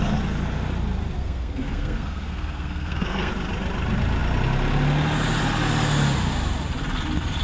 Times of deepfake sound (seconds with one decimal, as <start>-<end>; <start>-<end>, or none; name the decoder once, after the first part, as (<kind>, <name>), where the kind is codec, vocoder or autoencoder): 1.2-3.3 (codec, SNAC)